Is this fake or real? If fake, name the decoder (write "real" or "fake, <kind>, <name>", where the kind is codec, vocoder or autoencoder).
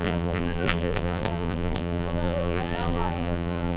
fake, vocoder, BigVGAN v2